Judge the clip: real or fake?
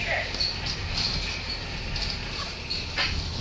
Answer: fake